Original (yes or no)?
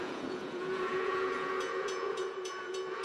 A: no